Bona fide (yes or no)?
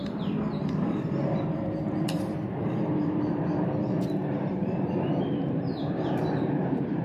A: no